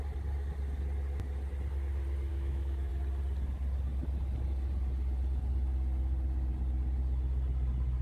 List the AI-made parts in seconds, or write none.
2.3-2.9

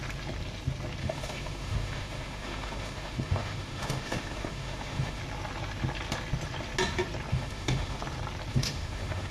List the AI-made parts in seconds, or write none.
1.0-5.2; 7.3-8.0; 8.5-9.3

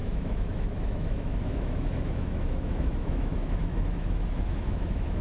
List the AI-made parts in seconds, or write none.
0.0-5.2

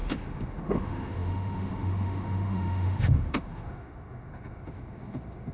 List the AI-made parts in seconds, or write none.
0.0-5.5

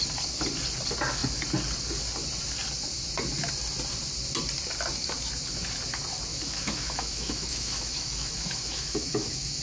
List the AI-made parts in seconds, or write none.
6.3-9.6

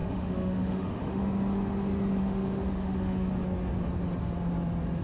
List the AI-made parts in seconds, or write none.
0.0-1.2; 2.2-3.3